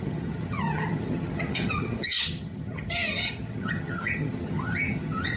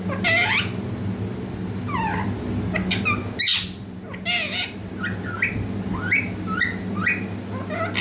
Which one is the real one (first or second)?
second